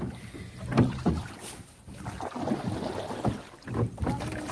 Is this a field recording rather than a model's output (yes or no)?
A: no